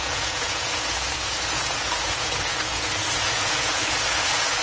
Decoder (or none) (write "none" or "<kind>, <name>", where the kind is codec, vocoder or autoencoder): vocoder, Vocos